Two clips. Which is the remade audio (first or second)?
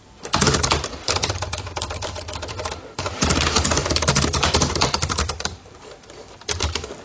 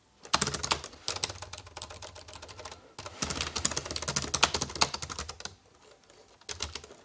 first